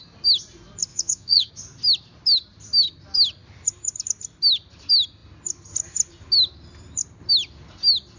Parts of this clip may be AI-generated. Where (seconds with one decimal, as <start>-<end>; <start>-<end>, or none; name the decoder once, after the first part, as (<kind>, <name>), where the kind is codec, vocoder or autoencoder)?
0.9-1.5 (vocoder, Vocos)